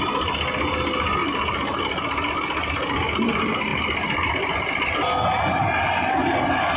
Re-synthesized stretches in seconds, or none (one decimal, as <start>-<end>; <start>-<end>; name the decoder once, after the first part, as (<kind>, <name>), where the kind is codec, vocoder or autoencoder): 1.2-1.8 (vocoder, BigVGAN v2)